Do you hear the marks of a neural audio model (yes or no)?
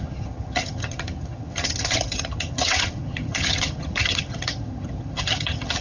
yes